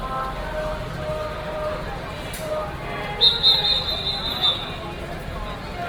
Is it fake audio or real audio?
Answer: real